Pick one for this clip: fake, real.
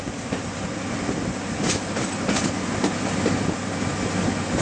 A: real